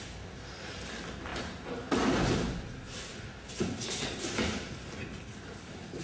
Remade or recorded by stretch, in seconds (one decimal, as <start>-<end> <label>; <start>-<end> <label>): 0.0-6.0 recorded